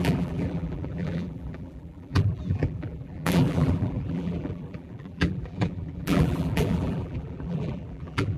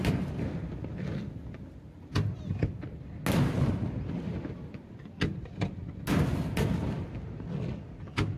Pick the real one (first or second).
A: second